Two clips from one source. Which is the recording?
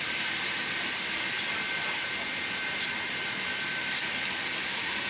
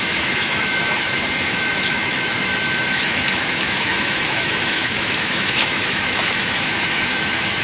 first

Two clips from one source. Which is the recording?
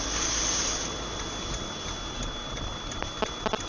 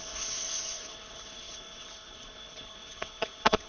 first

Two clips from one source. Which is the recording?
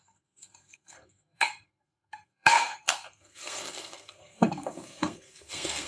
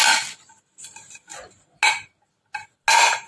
second